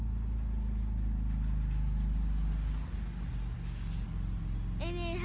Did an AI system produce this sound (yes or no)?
no